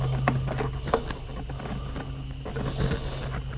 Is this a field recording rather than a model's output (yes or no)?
yes